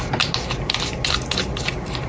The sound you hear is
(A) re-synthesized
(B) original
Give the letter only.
B